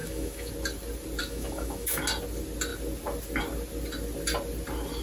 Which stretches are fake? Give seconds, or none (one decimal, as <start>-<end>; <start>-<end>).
0.0-0.5; 1.2-2.0